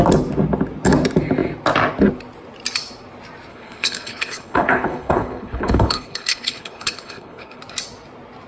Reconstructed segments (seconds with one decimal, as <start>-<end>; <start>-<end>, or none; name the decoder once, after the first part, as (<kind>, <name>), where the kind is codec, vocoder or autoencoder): 3.5-7.6 (codec, HILCodec)